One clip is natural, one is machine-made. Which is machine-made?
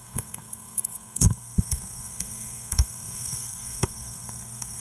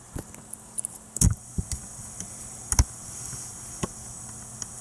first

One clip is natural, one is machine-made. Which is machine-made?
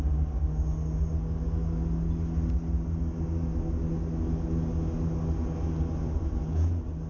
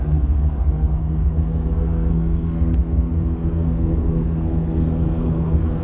second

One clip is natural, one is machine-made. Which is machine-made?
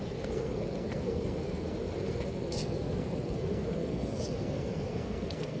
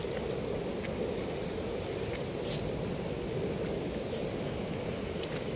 first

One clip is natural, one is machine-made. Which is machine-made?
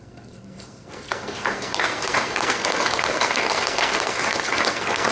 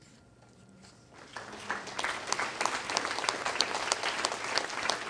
first